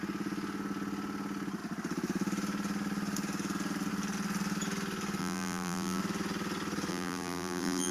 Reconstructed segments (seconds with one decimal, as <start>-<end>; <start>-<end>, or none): 5.2-6.0; 6.9-7.9